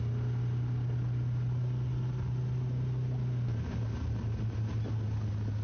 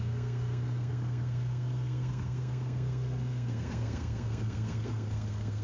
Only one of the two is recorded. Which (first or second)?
first